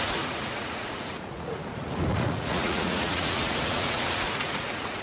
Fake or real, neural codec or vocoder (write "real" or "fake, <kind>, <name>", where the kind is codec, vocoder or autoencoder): fake, vocoder, Vocos